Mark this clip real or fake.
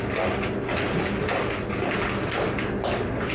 real